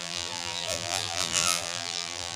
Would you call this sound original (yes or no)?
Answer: no